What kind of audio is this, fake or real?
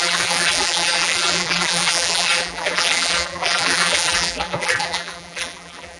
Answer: fake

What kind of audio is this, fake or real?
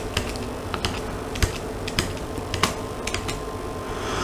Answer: real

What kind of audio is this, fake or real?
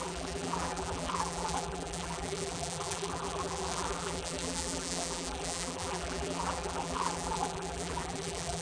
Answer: fake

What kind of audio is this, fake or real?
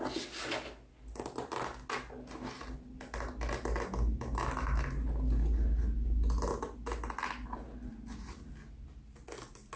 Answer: real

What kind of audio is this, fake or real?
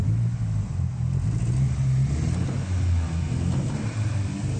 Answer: real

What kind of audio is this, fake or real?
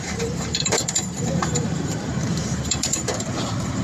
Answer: fake